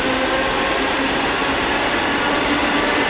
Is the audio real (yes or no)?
yes